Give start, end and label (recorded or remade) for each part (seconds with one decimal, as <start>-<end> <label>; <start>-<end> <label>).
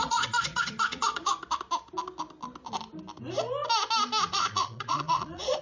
0.0-1.3 remade; 1.3-4.3 recorded; 4.3-5.6 remade